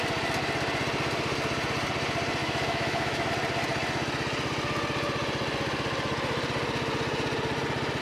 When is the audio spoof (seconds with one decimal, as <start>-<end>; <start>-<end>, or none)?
2.4-3.3